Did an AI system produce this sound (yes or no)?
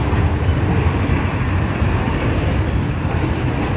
no